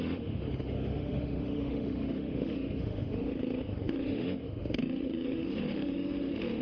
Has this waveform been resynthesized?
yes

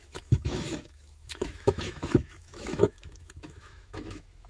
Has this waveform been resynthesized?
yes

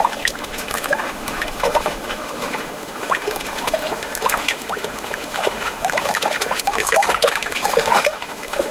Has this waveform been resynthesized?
yes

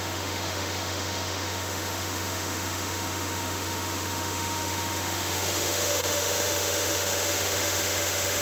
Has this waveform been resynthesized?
yes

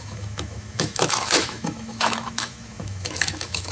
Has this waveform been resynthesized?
yes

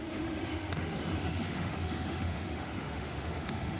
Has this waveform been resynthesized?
yes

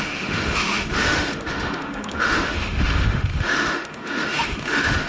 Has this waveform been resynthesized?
yes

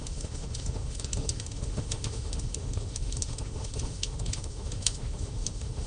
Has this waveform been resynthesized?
yes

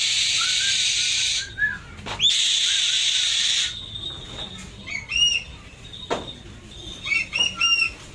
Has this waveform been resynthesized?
no